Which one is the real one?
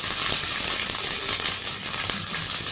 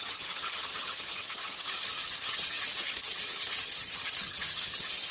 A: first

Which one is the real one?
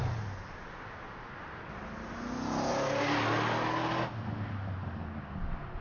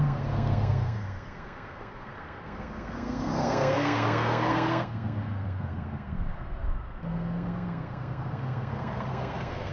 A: first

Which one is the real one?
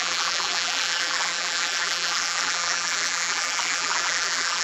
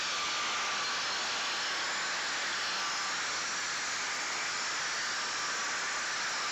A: second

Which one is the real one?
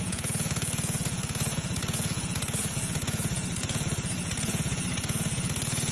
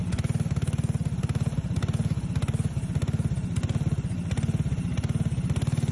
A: second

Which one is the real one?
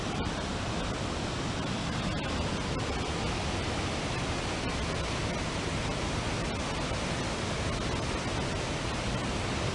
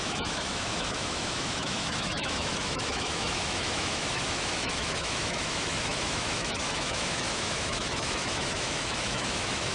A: first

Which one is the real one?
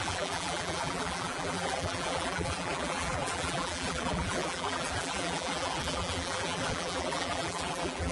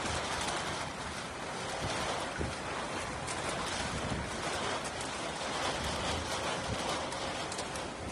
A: second